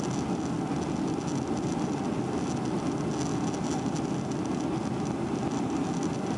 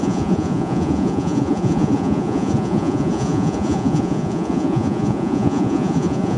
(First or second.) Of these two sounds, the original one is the first